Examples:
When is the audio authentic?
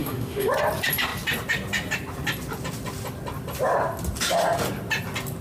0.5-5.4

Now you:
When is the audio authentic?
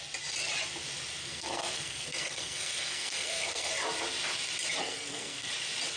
0.0-1.2; 3.7-4.8; 5.5-6.0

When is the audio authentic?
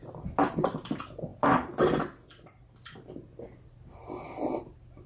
0.0-5.1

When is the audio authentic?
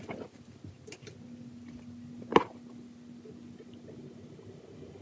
0.0-5.0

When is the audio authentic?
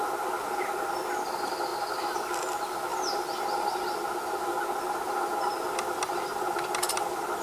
0.0-7.4